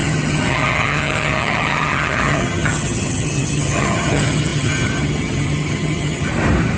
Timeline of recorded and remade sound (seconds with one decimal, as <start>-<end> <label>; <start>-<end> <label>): 0.0-6.3 remade; 6.3-6.8 recorded